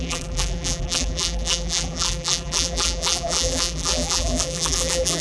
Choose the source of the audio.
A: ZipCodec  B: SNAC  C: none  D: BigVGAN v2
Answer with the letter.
D